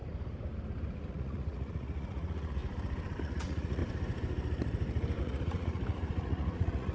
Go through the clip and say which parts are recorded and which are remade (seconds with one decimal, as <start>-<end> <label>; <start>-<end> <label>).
0.0-1.1 recorded; 1.1-2.6 remade; 2.6-3.2 recorded; 3.2-3.8 remade; 3.8-5.2 recorded; 5.2-6.9 remade